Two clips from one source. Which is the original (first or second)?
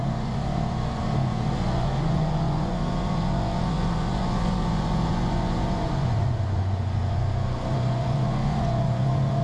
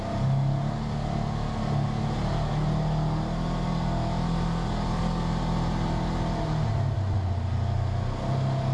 second